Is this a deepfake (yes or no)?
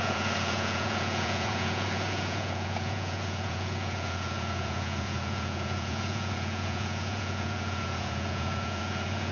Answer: yes